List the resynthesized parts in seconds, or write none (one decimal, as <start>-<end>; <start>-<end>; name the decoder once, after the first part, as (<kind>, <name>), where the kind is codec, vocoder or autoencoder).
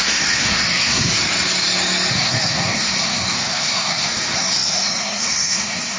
0.0-1.1 (codec, SNAC); 2.1-6.0